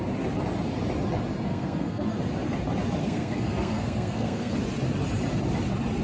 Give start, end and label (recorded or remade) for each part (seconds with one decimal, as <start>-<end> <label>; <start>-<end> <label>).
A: 0.0-1.5 recorded; 1.5-2.2 remade; 2.2-3.0 recorded; 3.0-4.5 remade; 4.5-6.0 recorded